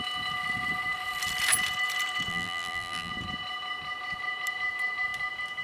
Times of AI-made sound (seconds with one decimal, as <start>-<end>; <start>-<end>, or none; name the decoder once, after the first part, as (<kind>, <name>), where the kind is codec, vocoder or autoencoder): 2.3-3.1 (vocoder, BigVGAN v2)